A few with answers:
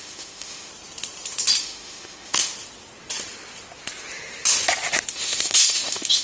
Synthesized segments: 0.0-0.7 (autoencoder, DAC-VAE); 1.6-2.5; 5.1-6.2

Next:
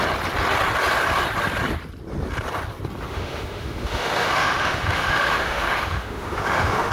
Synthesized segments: 3.1-6.9 (autoencoder, DAC-VAE)

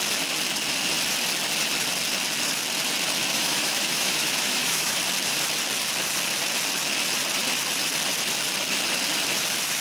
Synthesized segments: 3.3-5.0 (autoencoder, DAC-VAE)

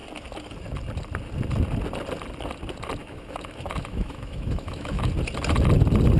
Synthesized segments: 3.0-5.1 (autoencoder, DAC-VAE)

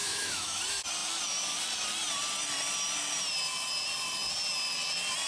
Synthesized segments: 0.0-0.6 (autoencoder, DAC-VAE)

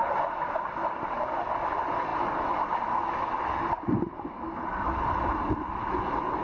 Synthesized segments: none